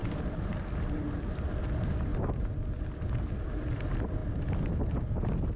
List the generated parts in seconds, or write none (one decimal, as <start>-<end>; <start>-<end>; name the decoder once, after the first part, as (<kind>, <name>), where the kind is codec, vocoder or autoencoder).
none